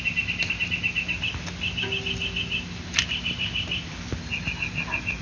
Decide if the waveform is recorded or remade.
recorded